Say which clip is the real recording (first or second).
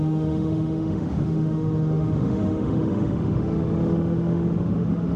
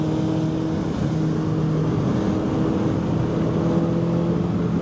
second